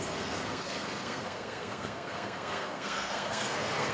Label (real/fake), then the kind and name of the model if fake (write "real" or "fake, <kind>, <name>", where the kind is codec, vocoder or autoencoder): fake, codec, SNAC